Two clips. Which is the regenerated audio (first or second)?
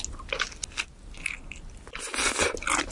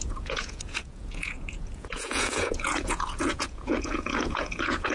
second